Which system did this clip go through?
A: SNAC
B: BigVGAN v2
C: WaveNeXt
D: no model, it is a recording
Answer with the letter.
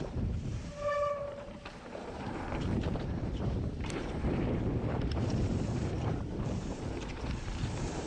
B